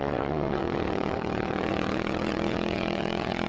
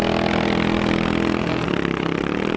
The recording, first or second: second